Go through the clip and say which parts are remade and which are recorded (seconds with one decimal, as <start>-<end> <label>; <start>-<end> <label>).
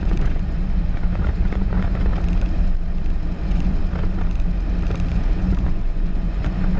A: 0.0-2.1 remade; 2.1-3.4 recorded; 3.4-3.8 remade; 3.8-5.1 recorded; 5.1-6.8 remade